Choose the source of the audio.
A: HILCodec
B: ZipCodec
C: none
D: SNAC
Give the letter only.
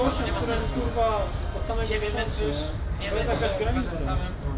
C